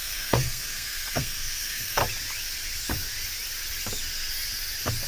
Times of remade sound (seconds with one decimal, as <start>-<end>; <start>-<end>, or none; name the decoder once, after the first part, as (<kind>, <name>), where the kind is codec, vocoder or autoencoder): 0.0-2.0 (codec, SNAC)